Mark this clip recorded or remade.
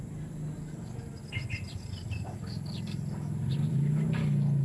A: recorded